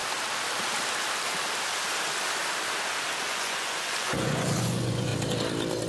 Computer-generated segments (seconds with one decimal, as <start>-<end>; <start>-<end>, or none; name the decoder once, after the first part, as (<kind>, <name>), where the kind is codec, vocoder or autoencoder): 3.3-5.1 (vocoder, Vocos)